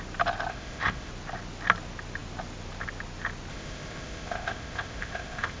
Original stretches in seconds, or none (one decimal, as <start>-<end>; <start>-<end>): 0.0-0.5; 1.1-3.5

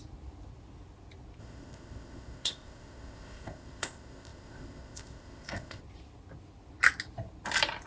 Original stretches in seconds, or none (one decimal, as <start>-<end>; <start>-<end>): 0.0-1.4; 5.8-7.9

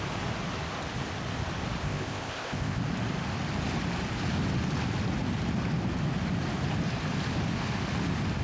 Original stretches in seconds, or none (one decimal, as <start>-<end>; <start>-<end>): 0.0-1.8; 2.8-8.4

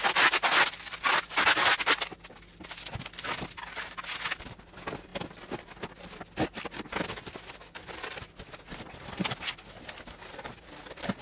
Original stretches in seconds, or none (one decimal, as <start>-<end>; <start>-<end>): 0.0-11.2

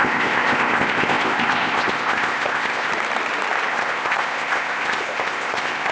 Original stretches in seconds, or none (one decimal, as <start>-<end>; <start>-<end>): 2.9-3.7